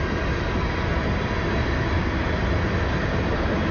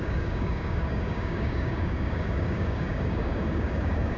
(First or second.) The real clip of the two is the first